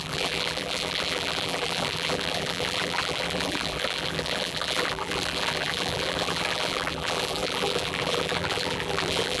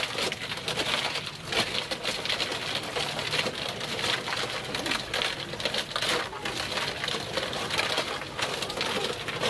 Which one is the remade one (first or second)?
first